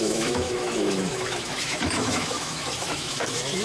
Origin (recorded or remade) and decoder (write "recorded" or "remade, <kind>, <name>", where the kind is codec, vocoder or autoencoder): remade, autoencoder, DAC-VAE